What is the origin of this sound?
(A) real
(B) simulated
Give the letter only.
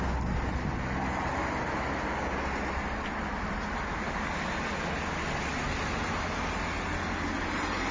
A